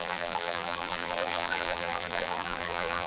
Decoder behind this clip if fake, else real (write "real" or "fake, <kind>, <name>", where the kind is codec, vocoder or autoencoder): fake, vocoder, BigVGAN v2